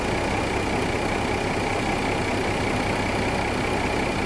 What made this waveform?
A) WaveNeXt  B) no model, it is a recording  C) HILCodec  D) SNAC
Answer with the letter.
B